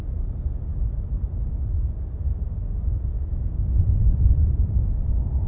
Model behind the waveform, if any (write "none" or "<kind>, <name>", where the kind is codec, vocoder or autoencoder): none